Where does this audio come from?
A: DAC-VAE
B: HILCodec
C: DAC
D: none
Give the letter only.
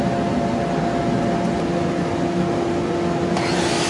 D